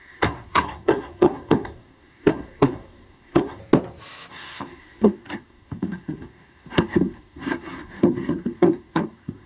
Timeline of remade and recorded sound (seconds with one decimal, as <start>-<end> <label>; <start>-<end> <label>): 0.0-3.6 remade; 3.6-4.3 recorded; 4.3-9.5 remade